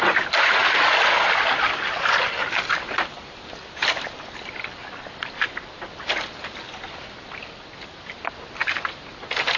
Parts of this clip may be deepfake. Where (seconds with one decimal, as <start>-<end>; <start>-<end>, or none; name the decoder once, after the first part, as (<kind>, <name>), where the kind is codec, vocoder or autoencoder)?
none